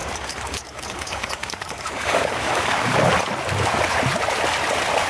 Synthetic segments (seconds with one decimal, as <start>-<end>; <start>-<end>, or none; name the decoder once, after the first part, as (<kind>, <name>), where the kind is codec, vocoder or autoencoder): 0.0-3.1 (codec, DAC)